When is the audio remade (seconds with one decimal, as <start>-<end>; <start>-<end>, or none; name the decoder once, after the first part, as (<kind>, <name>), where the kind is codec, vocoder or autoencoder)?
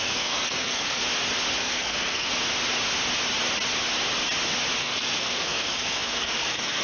0.0-1.0 (codec, SNAC); 1.6-2.3; 4.8-6.8